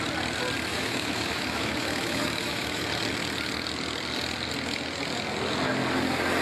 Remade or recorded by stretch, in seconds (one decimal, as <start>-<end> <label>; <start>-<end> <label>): 0.0-0.7 recorded; 0.7-2.8 remade; 2.8-6.4 recorded